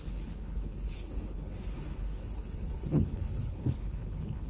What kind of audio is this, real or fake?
fake